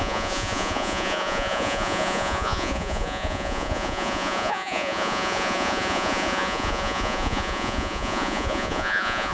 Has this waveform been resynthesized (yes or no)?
yes